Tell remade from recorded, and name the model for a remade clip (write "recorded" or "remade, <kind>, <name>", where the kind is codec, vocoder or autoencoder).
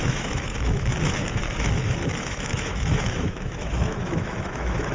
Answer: remade, autoencoder, DAC-VAE